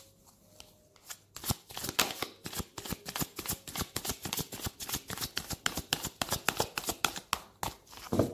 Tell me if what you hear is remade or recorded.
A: recorded